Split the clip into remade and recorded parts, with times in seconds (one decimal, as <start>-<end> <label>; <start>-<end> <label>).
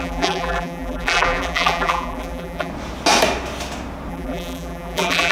0.0-2.7 remade; 2.7-4.1 recorded; 4.1-5.3 remade